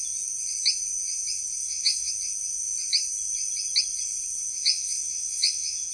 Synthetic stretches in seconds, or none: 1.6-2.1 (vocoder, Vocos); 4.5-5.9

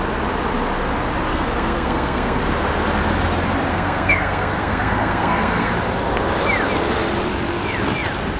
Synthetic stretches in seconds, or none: 1.3-2.4 (codec, SNAC); 3.7-5.7

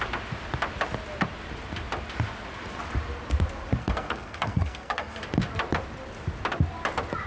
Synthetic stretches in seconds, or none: 3.8-5.2 (codec, SNAC)

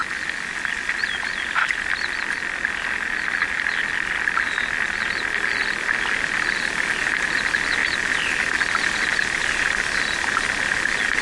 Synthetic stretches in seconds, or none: none

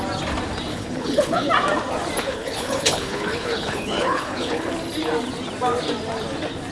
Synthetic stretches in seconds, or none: 0.7-1.5 (codec, HILCodec); 2.2-4.7